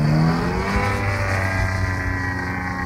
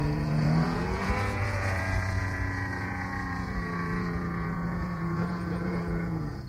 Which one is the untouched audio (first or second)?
first